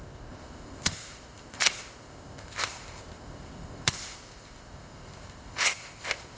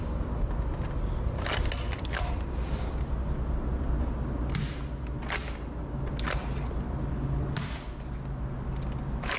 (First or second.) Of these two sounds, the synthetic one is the first